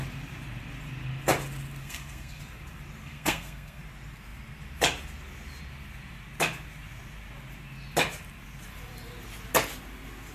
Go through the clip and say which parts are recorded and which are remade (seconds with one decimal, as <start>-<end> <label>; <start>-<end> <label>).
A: 0.0-1.8 recorded; 1.8-2.4 remade; 2.4-3.0 recorded; 3.0-3.8 remade; 3.8-10.3 recorded